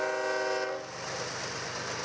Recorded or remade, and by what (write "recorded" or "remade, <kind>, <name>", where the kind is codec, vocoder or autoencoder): recorded